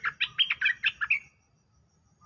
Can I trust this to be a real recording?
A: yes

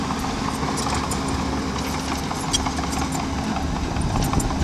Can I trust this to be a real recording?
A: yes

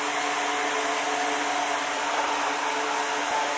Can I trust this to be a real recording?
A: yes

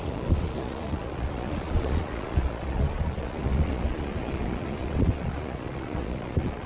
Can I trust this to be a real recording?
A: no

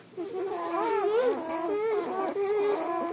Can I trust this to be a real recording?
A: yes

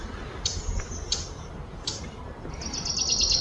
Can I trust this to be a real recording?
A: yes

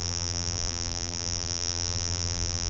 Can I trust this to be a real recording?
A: no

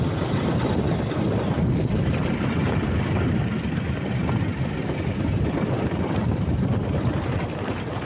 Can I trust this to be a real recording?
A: no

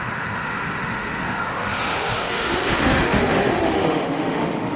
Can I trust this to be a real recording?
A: no